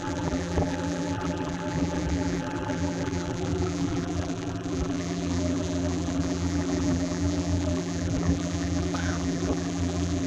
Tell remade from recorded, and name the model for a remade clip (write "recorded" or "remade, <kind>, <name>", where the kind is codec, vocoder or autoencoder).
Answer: remade, vocoder, BigVGAN v2